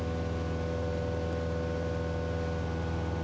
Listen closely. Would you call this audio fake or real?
real